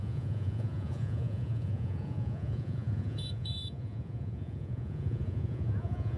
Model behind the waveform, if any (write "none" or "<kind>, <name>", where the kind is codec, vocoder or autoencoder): vocoder, Vocos